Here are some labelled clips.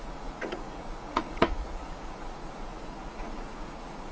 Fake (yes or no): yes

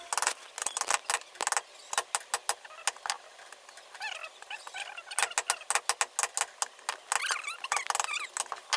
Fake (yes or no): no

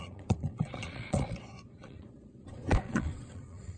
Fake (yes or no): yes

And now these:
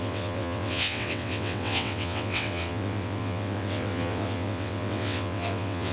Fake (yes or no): yes